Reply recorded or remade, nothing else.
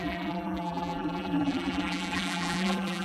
remade